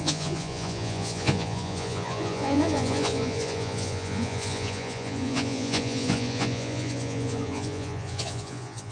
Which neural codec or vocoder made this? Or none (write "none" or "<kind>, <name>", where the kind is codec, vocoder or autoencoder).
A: vocoder, Vocos